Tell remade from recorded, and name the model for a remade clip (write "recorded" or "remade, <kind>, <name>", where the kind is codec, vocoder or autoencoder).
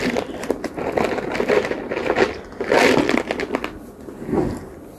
recorded